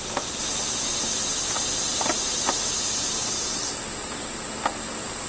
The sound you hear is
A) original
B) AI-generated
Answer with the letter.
A